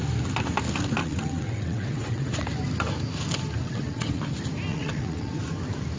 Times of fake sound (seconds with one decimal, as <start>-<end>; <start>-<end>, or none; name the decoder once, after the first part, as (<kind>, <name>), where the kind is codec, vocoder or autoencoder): 1.0-2.5 (vocoder, WaveNeXt); 3.6-4.2; 4.7-5.4